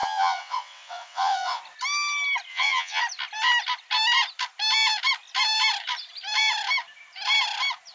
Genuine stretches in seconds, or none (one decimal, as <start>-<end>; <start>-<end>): 1.6-2.5; 3.0-7.9